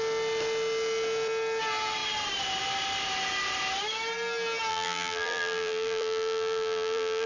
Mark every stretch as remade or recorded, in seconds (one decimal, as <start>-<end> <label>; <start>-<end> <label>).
0.0-4.7 recorded; 4.7-7.3 remade